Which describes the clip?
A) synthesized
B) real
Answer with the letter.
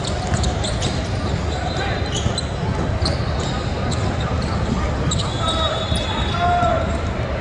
B